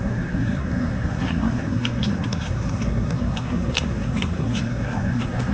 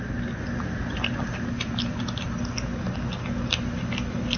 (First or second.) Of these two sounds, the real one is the second